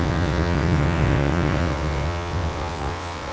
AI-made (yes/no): yes